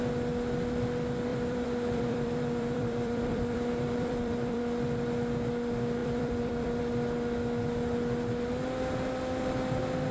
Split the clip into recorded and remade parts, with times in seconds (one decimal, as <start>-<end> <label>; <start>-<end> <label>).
0.0-1.3 recorded; 1.3-4.6 remade; 4.6-6.0 recorded; 6.0-6.8 remade; 6.8-10.1 recorded